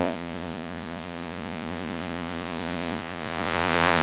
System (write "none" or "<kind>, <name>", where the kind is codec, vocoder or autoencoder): vocoder, Vocos